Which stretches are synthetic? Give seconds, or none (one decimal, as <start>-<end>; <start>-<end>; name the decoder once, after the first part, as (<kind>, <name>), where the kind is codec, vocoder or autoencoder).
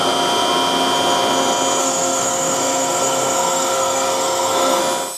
1.8-4.8 (codec, SNAC)